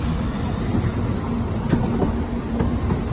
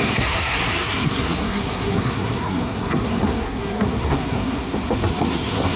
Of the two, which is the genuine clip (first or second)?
first